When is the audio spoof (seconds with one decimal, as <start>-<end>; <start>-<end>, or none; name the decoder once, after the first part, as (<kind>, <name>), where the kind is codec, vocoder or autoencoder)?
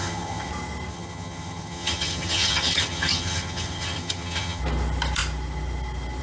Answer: 0.0-0.5 (vocoder, HiFi-GAN); 0.9-4.6